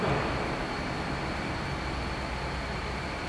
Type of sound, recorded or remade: recorded